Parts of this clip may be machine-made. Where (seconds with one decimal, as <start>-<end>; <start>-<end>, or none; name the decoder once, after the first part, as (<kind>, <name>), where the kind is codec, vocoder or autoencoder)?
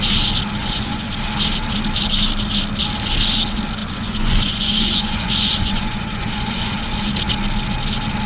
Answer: 0.6-1.1 (vocoder, Vocos); 3.8-6.8